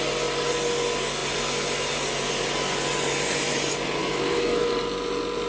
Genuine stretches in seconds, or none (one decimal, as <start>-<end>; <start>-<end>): 0.0-4.0; 4.7-5.5